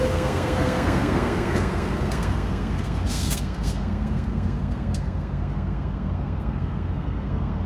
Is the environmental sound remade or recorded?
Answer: remade